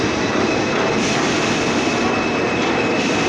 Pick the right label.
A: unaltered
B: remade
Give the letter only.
A